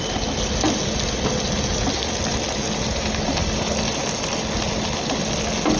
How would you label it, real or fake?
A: real